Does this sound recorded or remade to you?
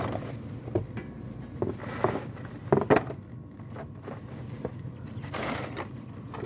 recorded